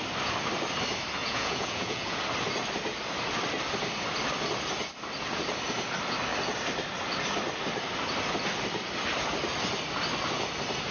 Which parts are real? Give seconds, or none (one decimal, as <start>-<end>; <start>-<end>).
0.0-1.2; 2.2-10.9